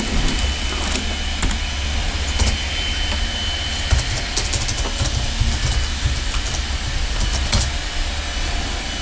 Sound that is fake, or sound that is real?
real